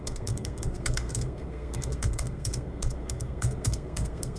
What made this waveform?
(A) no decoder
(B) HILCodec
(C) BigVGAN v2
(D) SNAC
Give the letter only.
D